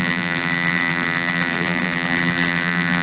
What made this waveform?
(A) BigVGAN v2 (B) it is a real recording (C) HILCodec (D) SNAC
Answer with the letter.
A